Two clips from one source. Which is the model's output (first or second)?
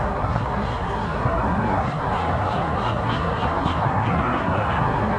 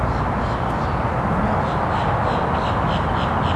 first